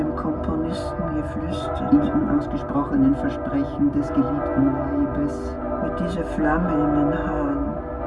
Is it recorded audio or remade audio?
recorded